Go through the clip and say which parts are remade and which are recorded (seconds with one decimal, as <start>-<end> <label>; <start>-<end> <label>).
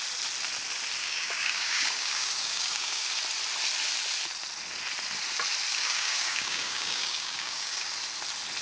0.0-1.0 recorded; 1.0-3.1 remade; 3.1-5.7 recorded; 5.7-7.9 remade; 7.9-8.6 recorded